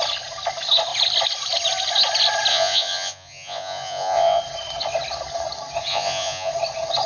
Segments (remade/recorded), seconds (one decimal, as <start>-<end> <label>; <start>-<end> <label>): 0.0-2.5 recorded; 2.5-4.4 remade; 4.4-5.9 recorded; 5.9-6.5 remade; 6.5-7.1 recorded